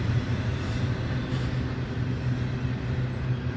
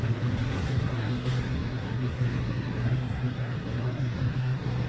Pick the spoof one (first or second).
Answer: second